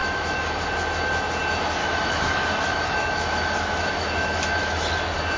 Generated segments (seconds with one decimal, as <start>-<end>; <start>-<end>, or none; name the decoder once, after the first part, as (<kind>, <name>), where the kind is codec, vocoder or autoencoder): 0.0-0.6 (autoencoder, DAC-VAE); 1.8-5.0

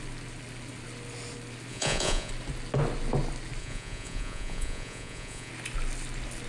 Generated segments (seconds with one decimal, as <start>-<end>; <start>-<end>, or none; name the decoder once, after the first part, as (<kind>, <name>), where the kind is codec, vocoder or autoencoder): 1.7-2.3 (vocoder, Vocos); 3.6-5.5

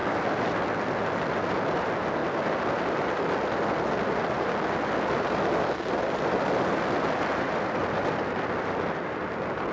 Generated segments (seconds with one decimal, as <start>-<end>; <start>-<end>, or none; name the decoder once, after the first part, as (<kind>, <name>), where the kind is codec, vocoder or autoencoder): 7.8-8.3 (vocoder, BigVGAN v2)

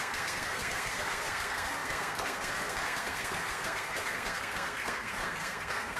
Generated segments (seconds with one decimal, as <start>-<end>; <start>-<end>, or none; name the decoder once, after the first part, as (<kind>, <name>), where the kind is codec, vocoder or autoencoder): 0.0-6.0 (codec, SNAC)